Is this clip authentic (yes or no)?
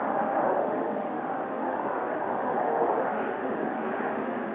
no